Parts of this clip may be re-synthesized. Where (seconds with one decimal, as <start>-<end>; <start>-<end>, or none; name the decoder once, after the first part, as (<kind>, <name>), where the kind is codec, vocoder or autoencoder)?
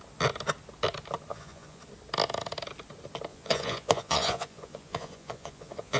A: 1.3-1.8 (vocoder, Vocos); 3.3-6.0